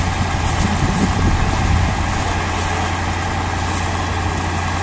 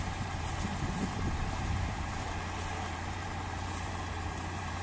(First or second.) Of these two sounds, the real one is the first